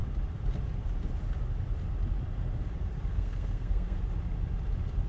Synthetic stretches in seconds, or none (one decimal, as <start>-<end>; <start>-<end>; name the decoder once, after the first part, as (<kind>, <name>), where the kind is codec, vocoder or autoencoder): 3.1-4.0 (codec, SNAC)